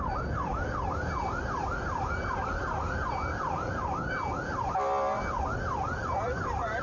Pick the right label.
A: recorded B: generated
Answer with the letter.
A